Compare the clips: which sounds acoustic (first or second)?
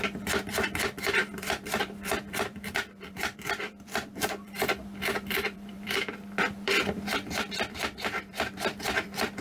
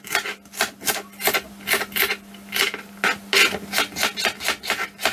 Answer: second